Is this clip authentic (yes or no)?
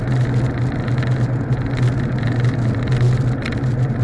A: yes